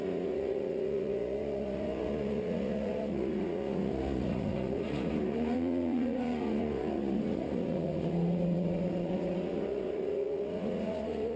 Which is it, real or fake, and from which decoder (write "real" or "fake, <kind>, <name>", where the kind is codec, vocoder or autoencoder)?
fake, vocoder, Vocos